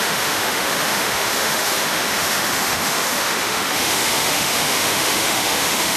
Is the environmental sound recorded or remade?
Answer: remade